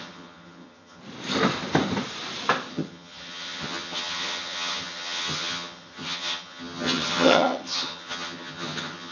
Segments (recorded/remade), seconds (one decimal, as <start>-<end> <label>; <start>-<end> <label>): 0.0-1.0 remade; 1.0-2.7 recorded; 2.7-9.1 remade